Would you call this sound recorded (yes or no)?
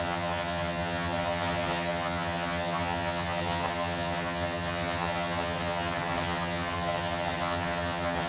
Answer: no